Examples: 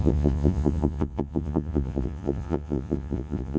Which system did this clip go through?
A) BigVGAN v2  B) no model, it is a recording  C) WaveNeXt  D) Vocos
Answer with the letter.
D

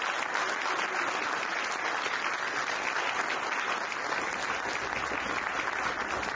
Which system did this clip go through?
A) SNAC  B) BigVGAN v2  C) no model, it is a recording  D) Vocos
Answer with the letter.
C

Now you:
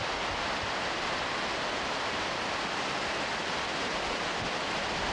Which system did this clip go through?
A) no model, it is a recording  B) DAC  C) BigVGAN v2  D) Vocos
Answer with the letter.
A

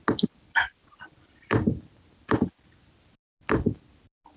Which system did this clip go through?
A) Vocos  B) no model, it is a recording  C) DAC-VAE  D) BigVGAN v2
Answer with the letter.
B